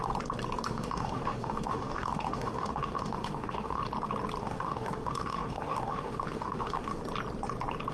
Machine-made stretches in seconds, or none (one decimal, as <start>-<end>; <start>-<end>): 0.7-3.8; 4.4-7.0